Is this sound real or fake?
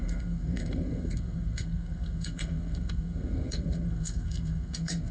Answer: fake